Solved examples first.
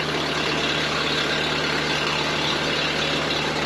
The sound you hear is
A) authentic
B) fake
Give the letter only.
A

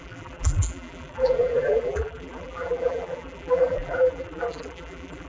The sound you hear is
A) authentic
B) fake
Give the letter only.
B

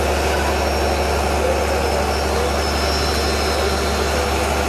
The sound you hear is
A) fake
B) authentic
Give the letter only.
B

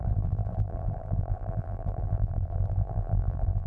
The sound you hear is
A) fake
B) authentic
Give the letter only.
A